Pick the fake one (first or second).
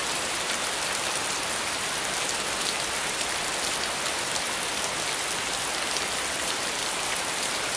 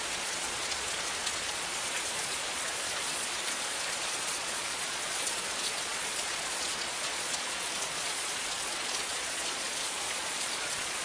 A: second